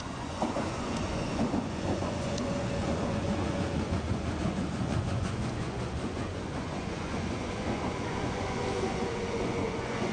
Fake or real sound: fake